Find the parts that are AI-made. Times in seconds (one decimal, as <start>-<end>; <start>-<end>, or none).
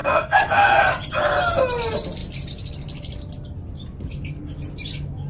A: 0.0-0.9